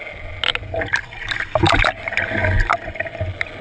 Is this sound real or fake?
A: real